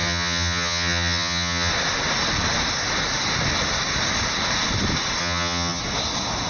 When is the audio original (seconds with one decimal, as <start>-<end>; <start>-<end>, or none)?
1.7-5.2; 5.8-6.5